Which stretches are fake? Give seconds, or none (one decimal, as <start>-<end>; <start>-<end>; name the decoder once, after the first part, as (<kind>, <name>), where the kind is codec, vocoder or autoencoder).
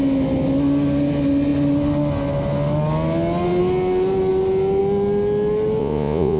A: 5.8-6.4 (vocoder, Vocos)